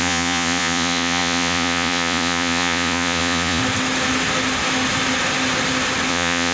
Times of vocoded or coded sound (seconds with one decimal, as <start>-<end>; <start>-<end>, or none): 0.0-3.6; 6.1-6.5